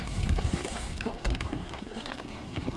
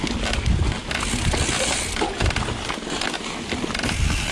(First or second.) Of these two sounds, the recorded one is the second